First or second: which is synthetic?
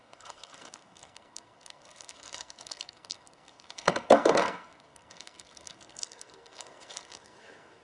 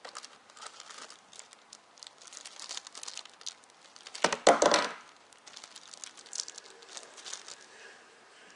first